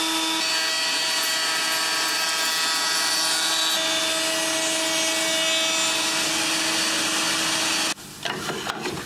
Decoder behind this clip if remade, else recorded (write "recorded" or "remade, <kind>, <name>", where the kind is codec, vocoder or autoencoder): recorded